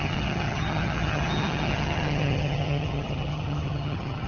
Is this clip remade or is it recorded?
remade